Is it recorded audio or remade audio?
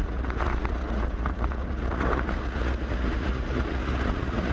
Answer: remade